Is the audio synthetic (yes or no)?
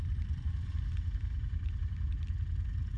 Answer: no